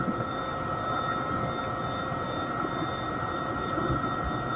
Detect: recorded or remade recorded